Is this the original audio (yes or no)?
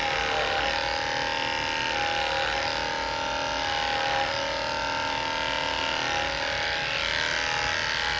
yes